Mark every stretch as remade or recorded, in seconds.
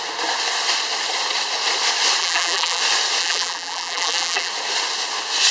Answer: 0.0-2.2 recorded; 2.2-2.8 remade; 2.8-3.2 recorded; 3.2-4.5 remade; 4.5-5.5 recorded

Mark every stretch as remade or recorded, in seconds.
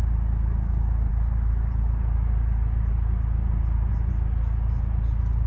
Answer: 0.0-5.5 recorded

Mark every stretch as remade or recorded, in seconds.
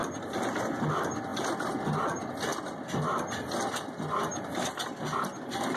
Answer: 0.0-1.3 recorded; 1.3-1.9 remade; 1.9-2.5 recorded; 2.5-3.6 remade; 3.6-5.8 recorded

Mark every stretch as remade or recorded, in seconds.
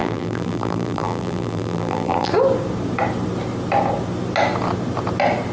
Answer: 0.0-2.3 remade; 2.3-5.5 recorded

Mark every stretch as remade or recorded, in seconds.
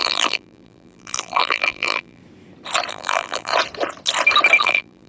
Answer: 0.0-2.2 remade; 2.2-2.9 recorded; 2.9-3.5 remade; 3.5-4.6 recorded; 4.6-5.1 remade